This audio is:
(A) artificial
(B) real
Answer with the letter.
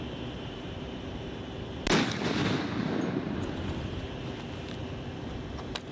B